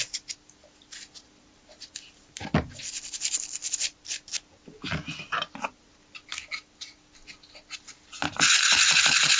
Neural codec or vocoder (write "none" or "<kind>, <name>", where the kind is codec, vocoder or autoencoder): none